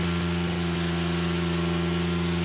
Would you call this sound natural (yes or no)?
yes